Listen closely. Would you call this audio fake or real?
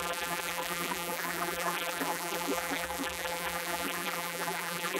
fake